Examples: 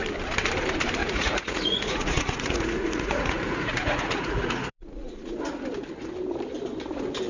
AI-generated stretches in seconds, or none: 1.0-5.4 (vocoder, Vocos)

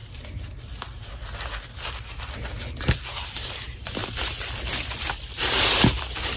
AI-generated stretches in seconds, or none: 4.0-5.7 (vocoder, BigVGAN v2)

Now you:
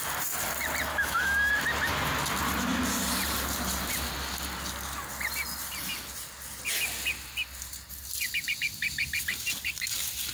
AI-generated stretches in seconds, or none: 0.9-1.5 (autoencoder, DAC-VAE)

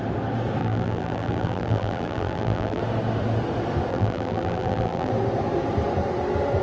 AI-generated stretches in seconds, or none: 0.6-2.8 (vocoder, BigVGAN v2); 3.9-5.1

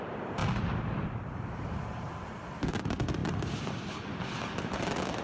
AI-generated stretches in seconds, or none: none